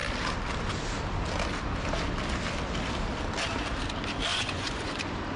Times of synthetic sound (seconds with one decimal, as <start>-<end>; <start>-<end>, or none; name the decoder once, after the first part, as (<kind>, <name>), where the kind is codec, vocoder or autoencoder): 4.3-5.0 (vocoder, Vocos)